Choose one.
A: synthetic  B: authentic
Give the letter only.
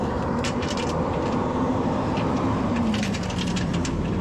A